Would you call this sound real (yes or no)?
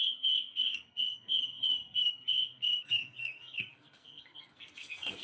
no